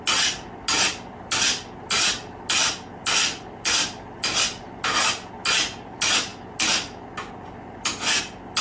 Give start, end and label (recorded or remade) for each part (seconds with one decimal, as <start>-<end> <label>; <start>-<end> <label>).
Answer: 0.0-8.6 recorded